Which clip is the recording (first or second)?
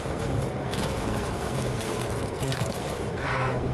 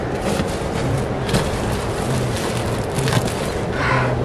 second